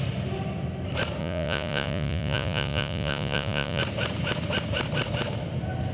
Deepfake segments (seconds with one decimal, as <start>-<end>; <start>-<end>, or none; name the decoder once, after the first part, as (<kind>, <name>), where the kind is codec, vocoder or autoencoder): 1.2-3.8 (vocoder, Vocos)